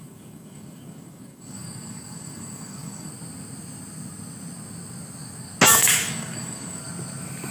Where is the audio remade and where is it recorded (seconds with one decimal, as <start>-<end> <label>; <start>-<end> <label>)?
0.0-3.1 remade; 3.1-5.7 recorded; 5.7-6.8 remade; 6.8-7.5 recorded